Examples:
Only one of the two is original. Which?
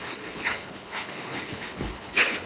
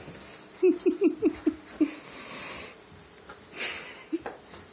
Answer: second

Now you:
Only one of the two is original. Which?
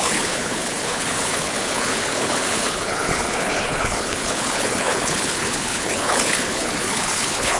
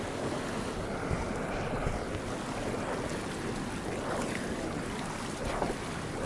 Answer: second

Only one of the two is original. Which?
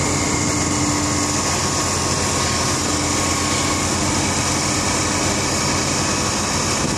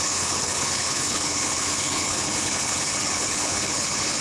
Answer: first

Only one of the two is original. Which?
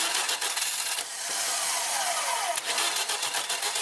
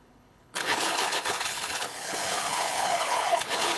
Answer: first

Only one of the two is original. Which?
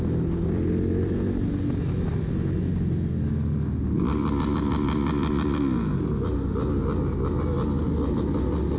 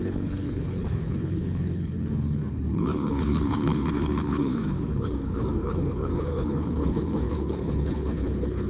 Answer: first